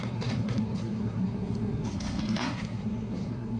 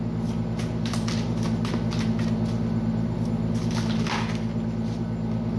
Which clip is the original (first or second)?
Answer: second